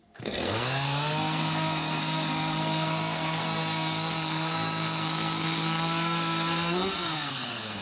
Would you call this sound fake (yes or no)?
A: yes